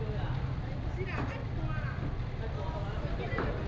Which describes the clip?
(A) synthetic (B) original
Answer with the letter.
B